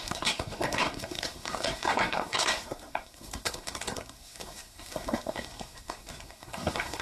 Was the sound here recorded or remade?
remade